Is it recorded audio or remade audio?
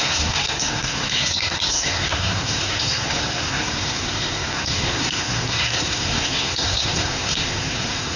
remade